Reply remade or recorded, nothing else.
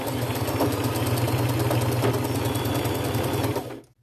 recorded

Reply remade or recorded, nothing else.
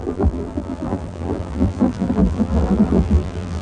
remade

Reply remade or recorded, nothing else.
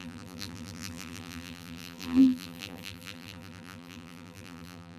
remade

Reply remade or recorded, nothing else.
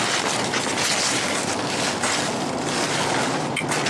recorded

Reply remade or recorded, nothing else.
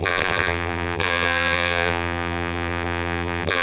remade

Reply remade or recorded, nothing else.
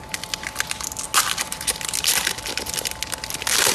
recorded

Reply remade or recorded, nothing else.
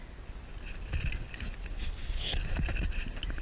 recorded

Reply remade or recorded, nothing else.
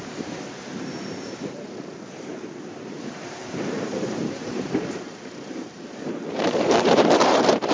remade